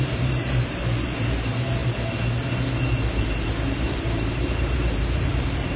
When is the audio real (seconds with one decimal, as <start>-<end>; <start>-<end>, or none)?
1.8-3.2